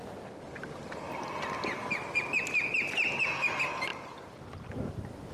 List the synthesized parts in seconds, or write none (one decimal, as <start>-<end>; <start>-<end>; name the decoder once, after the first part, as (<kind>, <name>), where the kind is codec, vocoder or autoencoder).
none